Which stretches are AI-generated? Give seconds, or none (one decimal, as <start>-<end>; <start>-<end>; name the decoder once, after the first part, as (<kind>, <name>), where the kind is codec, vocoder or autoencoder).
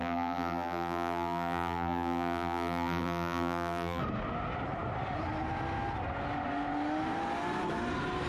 0.0-4.0 (vocoder, BigVGAN v2)